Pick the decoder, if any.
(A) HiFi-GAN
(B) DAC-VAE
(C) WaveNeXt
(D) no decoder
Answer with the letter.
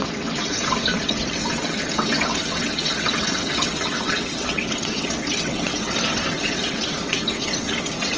C